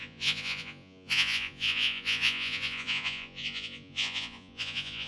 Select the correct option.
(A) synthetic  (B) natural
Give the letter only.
A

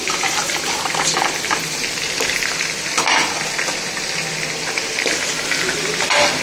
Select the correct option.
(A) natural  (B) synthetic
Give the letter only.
A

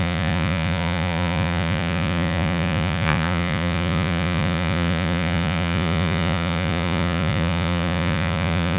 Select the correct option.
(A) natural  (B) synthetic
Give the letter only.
B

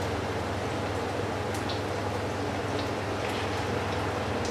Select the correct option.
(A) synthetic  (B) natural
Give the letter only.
B